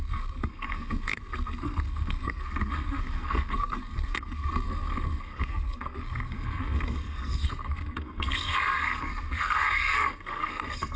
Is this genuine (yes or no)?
no